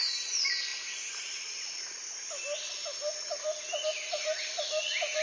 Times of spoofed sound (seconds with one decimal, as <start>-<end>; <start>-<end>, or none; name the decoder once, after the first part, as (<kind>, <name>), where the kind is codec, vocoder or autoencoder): none